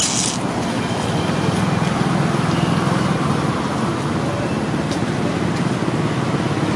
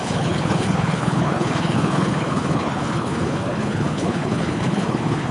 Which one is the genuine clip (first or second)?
first